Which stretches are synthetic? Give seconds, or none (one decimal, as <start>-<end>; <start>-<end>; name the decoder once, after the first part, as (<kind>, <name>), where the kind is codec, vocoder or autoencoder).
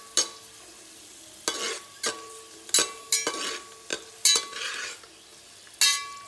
none